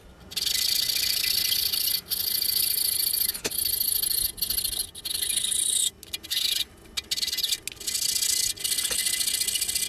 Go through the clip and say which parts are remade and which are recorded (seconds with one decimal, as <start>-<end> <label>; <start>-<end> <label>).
0.0-9.9 recorded